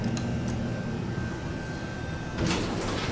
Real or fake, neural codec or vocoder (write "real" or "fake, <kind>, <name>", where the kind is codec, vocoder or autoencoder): real